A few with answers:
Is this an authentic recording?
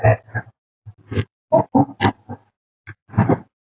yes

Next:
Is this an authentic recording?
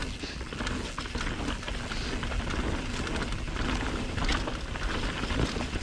yes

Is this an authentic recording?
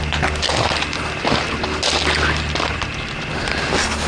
yes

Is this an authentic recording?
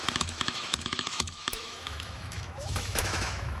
no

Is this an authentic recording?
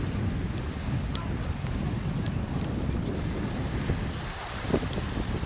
yes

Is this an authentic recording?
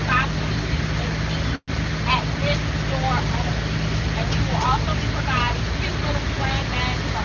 yes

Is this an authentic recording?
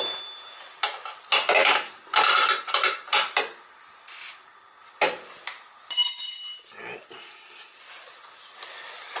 yes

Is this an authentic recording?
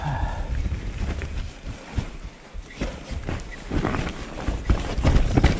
yes